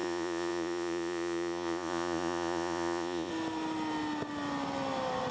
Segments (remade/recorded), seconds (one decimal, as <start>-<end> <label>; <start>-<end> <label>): 0.0-3.3 remade; 3.3-5.3 recorded